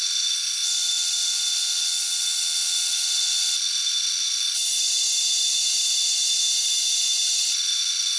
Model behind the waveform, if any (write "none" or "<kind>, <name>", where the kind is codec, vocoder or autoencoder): none